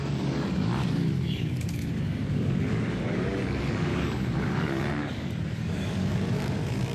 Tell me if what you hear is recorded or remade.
remade